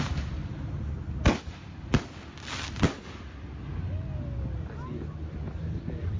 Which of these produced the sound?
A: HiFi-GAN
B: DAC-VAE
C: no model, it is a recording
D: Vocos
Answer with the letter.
C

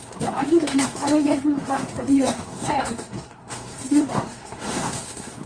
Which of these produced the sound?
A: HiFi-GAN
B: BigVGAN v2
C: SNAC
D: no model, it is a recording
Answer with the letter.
C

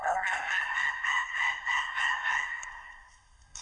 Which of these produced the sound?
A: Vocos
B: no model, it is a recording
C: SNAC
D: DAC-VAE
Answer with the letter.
C